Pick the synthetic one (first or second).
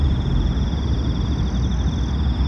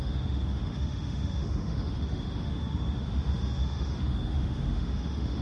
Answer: second